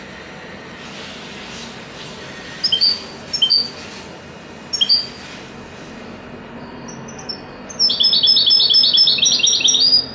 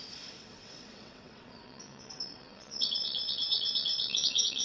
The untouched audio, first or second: first